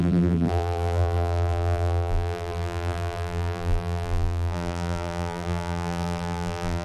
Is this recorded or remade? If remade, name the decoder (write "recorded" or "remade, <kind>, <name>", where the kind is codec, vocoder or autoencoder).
remade, vocoder, BigVGAN v2